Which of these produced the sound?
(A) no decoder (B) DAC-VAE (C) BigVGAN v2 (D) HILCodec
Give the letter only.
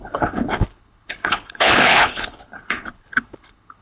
D